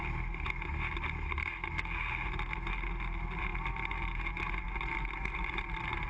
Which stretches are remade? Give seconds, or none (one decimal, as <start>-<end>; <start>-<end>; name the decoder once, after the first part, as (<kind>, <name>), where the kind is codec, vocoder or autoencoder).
none

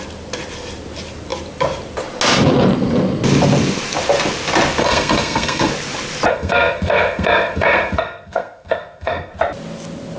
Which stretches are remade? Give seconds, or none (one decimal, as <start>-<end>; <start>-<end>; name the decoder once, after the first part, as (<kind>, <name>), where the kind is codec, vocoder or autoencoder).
4.8-5.7 (codec, SNAC); 6.3-9.3

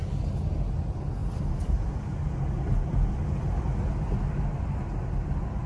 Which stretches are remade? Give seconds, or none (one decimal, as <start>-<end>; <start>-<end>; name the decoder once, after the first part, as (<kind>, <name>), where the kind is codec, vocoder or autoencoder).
none